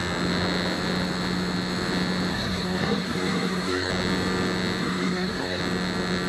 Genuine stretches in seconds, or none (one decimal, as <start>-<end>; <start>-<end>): 0.0-2.3; 3.9-4.8; 5.6-6.3